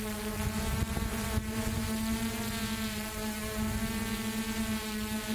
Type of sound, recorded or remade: recorded